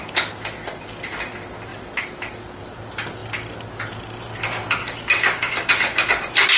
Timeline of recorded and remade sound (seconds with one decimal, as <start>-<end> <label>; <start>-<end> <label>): 0.0-4.8 recorded; 4.8-5.7 remade; 5.7-6.6 recorded